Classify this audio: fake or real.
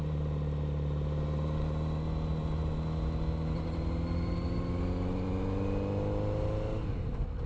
real